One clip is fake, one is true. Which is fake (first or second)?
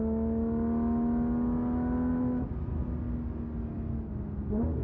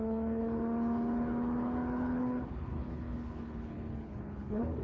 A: second